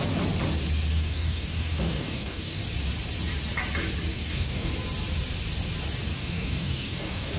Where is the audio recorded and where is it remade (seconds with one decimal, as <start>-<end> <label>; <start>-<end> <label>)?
0.0-0.9 recorded; 0.9-2.6 remade; 2.6-4.1 recorded; 4.1-4.7 remade; 4.7-6.2 recorded; 6.2-7.4 remade